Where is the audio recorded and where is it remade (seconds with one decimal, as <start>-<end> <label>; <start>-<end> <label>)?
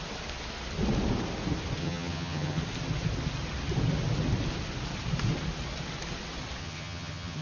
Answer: 0.0-1.8 recorded; 1.8-2.6 remade; 2.6-6.6 recorded; 6.6-7.4 remade